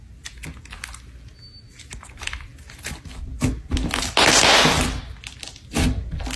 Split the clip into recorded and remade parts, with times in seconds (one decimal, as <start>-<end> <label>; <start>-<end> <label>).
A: 0.0-6.4 recorded